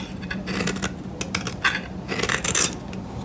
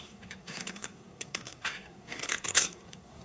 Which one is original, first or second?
first